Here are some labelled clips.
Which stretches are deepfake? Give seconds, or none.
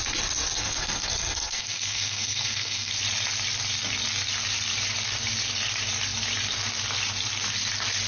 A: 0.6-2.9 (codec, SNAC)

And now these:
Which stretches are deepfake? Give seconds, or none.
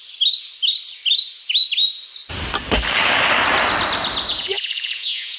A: 4.3-5.4 (vocoder, Vocos)